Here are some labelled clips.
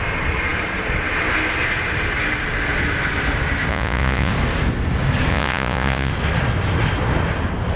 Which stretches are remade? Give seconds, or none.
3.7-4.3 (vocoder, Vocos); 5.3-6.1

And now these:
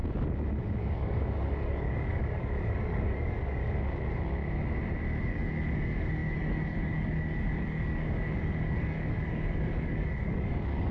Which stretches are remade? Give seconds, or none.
0.8-3.6 (codec, DAC); 5.2-10.9